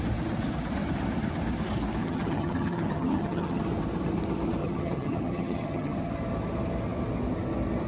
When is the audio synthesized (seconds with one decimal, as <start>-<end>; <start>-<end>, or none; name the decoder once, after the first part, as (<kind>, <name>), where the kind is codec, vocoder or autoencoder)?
2.0-3.6 (vocoder, HiFi-GAN); 4.6-6.1